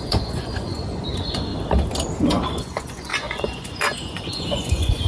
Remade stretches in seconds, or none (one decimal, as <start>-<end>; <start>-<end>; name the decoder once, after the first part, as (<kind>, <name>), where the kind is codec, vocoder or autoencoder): 0.0-1.5 (vocoder, Vocos); 2.2-5.1